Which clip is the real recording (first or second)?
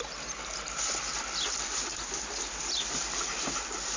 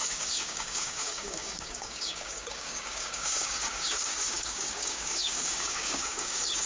first